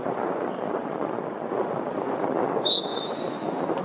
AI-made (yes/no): yes